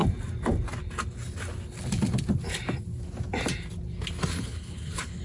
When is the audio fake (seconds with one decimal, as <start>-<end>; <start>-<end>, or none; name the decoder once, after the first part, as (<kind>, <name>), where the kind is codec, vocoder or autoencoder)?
4.3-5.2 (codec, HILCodec)